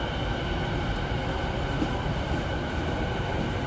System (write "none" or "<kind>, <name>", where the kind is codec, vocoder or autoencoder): none